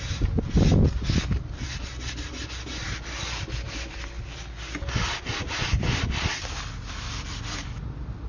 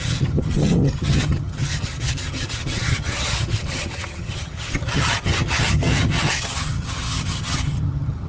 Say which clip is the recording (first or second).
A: first